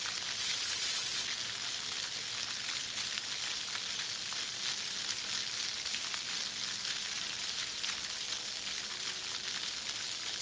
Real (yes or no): yes